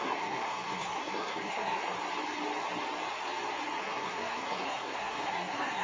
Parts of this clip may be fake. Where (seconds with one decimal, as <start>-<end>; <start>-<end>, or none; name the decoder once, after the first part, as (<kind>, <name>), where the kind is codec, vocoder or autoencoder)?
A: 0.0-1.8 (codec, SNAC); 3.8-5.8